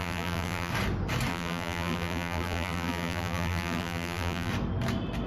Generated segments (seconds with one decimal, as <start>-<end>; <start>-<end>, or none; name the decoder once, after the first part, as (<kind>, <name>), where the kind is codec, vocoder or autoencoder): 0.0-0.7 (vocoder, BigVGAN v2); 1.3-4.5